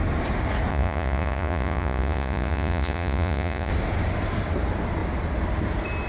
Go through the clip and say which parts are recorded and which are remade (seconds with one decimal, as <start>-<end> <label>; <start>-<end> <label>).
0.0-0.7 recorded; 0.7-3.7 remade; 3.7-6.1 recorded